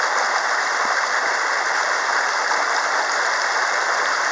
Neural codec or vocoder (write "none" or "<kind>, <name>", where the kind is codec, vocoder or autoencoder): none